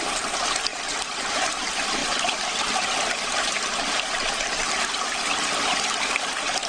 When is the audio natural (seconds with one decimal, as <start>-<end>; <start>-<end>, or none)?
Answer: 0.7-1.3